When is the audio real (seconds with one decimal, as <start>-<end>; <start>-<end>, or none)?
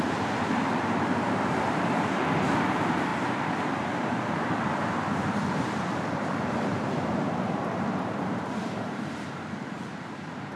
none